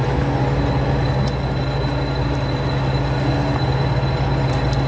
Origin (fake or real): real